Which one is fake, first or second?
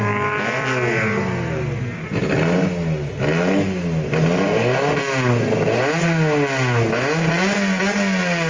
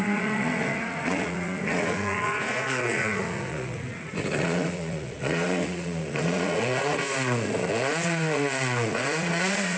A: second